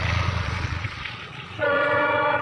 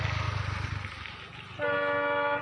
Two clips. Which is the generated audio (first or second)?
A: first